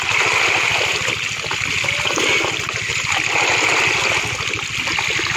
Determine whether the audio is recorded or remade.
recorded